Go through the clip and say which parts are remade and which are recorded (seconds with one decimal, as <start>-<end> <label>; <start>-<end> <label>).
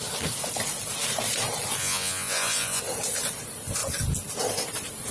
0.0-1.8 recorded; 1.8-2.8 remade; 2.8-5.1 recorded